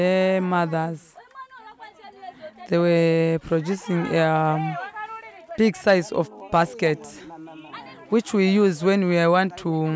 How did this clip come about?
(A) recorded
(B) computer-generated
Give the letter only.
A